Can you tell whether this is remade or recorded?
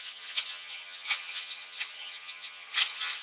remade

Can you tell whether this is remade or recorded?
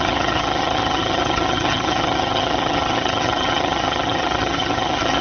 remade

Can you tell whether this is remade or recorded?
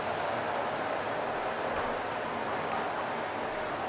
recorded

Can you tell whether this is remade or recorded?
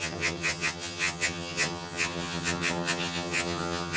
remade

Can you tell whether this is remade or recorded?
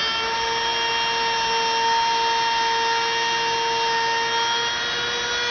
recorded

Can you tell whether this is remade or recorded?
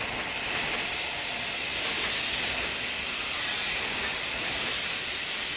recorded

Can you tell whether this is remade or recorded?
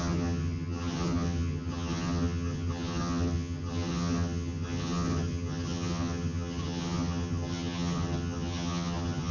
remade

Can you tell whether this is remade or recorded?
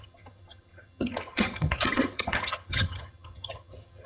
remade